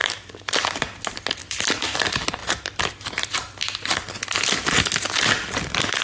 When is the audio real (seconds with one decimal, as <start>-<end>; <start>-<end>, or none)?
1.0-1.4; 2.0-6.0